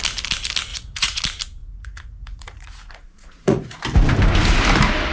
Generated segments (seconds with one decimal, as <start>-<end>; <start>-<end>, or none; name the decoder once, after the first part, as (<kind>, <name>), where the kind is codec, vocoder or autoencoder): 0.7-1.2 (vocoder, Vocos); 1.6-3.8